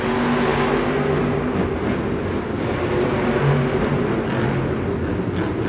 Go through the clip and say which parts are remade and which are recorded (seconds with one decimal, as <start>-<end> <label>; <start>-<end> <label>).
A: 0.0-5.7 recorded